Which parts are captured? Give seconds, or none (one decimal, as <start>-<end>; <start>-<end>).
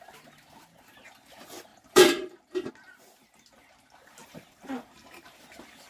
0.0-1.7; 2.7-4.2; 5.4-5.9